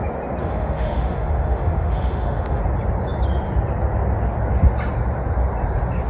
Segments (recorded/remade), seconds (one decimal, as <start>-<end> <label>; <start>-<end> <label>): 0.0-0.4 recorded; 0.4-2.6 remade; 2.6-6.1 recorded